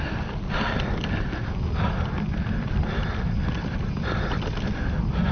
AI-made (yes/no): no